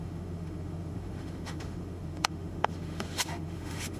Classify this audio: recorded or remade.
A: remade